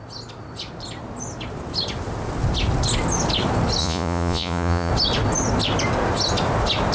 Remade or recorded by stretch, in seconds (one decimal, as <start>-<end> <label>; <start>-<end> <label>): 0.0-3.8 recorded; 3.8-4.9 remade; 4.9-6.9 recorded